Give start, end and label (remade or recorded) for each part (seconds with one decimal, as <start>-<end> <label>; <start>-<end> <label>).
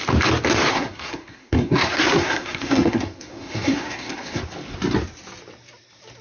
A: 0.0-0.7 recorded; 0.7-4.4 remade; 4.4-6.2 recorded